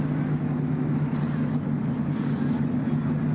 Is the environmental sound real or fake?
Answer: real